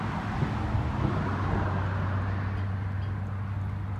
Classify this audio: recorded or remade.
recorded